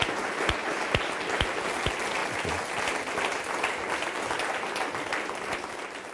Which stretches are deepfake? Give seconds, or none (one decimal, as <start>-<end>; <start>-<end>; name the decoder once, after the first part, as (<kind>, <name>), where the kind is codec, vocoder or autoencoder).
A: none